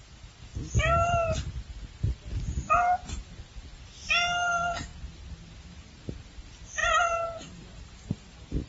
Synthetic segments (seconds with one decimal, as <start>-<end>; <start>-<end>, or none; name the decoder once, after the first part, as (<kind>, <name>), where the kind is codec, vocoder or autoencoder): 6.8-7.8 (vocoder, BigVGAN v2)